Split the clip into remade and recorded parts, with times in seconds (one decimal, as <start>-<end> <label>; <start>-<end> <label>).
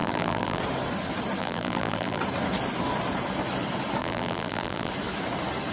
0.0-0.6 remade; 0.6-1.4 recorded; 1.4-2.2 remade; 2.2-4.0 recorded; 4.0-4.9 remade; 4.9-5.7 recorded